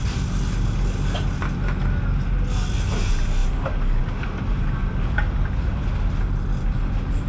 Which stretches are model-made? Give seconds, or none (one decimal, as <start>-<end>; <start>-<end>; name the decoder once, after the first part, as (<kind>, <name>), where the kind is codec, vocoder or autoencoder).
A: none